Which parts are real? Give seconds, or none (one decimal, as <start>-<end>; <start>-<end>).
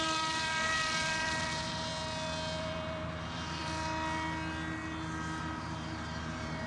1.9-2.6; 3.6-5.4